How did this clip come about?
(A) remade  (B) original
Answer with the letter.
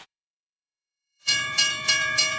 A